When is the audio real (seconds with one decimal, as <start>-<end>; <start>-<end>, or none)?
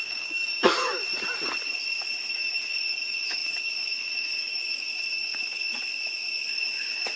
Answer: 1.0-2.3